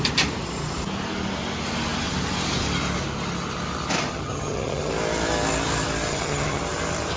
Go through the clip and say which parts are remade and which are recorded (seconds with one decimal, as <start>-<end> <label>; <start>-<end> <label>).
0.0-4.1 recorded; 4.1-4.9 remade; 4.9-6.1 recorded; 6.1-6.6 remade; 6.6-7.2 recorded